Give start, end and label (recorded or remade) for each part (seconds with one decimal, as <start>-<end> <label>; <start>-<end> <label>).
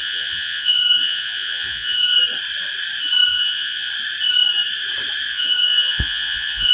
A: 0.0-2.2 remade; 2.2-3.3 recorded; 3.3-3.9 remade; 3.9-5.3 recorded; 5.3-6.7 remade